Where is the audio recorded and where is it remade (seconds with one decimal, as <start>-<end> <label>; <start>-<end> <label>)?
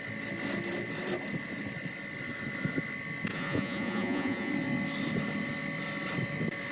0.0-3.3 recorded; 3.3-4.5 remade; 4.5-6.7 recorded